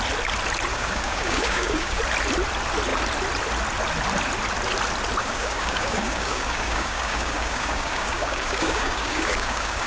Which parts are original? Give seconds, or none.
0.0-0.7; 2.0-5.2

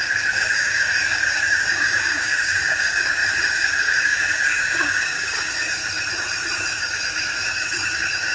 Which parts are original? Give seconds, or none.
5.8-6.7